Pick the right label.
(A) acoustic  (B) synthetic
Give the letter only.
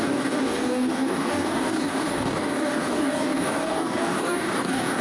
B